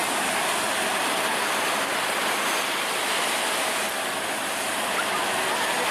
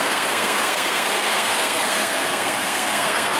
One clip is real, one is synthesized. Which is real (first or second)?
first